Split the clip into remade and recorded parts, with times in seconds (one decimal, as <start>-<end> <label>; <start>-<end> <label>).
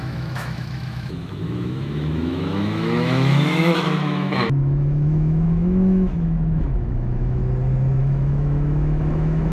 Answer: 0.0-7.4 remade; 7.4-8.0 recorded; 8.0-9.5 remade